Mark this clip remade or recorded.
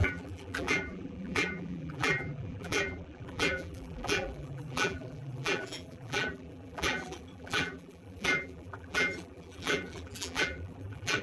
remade